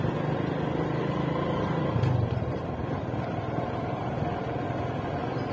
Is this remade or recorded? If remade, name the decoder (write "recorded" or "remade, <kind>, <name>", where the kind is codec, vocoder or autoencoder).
recorded